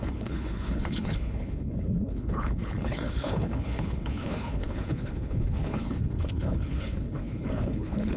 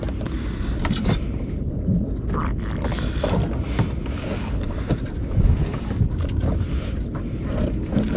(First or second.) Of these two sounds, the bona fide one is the second